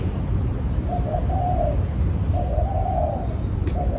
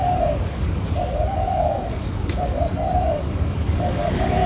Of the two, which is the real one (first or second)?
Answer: first